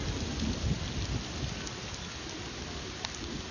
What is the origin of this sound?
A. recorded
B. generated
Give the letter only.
A